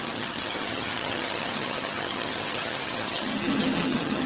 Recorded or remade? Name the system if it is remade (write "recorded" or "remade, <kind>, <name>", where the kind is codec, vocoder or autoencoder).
remade, vocoder, HiFi-GAN